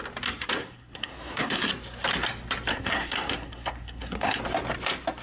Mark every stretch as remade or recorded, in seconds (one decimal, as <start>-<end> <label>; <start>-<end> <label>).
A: 0.0-0.6 recorded; 0.6-1.7 remade; 1.7-2.7 recorded; 2.7-4.4 remade; 4.4-5.2 recorded